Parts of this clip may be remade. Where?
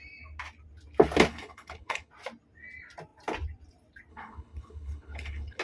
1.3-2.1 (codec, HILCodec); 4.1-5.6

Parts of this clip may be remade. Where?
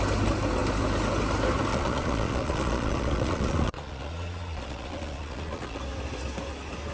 1.7-5.8 (vocoder, Vocos)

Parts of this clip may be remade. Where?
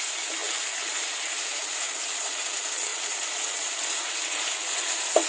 0.0-5.3 (vocoder, Vocos)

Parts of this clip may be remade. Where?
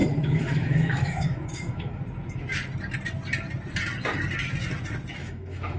0.0-2.0 (autoencoder, DAC-VAE); 5.2-5.8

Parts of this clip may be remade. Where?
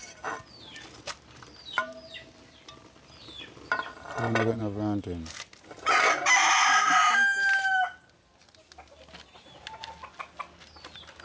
0.0-4.6 (vocoder, BigVGAN v2)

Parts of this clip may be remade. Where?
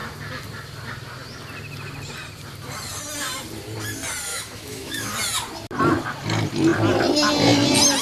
4.3-5.1 (autoencoder, DAC-VAE)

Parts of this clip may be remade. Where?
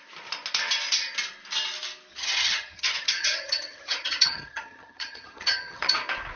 2.1-5.9 (vocoder, HiFi-GAN)